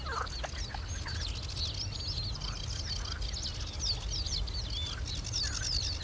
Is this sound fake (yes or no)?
no